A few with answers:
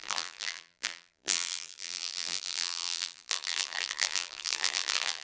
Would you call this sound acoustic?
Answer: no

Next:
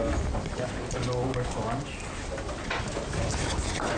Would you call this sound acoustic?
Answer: yes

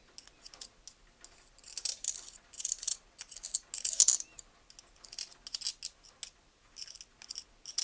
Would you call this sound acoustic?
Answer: yes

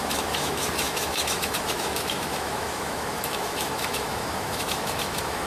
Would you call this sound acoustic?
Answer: no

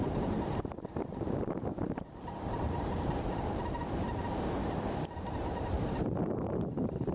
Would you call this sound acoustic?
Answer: no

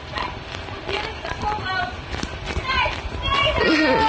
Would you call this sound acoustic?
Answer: yes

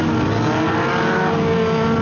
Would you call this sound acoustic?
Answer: yes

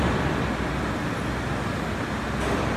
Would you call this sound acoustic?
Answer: yes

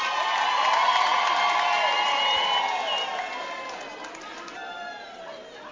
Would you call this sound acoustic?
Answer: yes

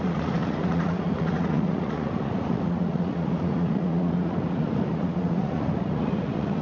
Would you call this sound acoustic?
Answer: no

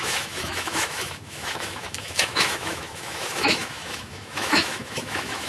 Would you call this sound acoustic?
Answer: no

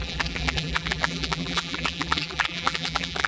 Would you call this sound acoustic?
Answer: no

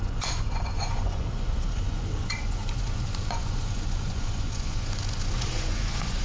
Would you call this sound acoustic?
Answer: no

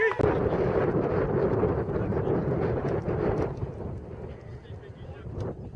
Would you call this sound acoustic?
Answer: yes